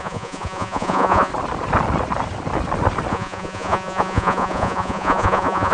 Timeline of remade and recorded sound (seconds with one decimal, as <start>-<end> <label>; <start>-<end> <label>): 0.0-1.3 remade; 1.3-3.1 recorded; 3.1-5.7 remade